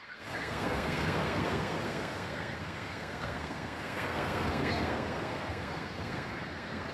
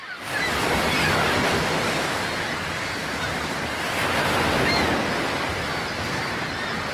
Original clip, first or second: second